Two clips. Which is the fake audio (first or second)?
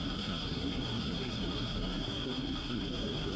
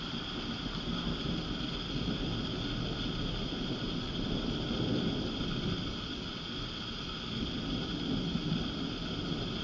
first